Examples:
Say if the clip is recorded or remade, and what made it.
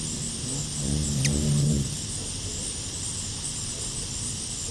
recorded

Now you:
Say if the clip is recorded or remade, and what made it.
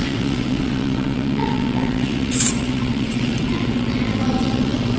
remade, vocoder, WaveNeXt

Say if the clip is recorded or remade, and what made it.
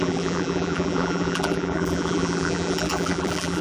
remade, vocoder, BigVGAN v2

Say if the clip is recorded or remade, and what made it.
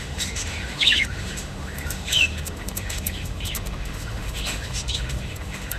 remade, autoencoder, DAC-VAE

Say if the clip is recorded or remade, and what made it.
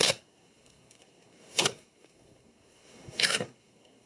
remade, codec, SNAC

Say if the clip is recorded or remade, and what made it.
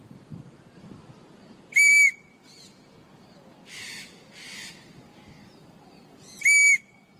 remade, vocoder, BigVGAN v2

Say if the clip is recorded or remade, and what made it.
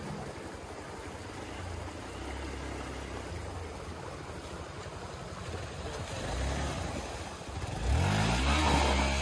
recorded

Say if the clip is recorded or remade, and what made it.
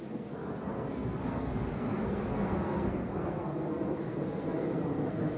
remade, codec, SNAC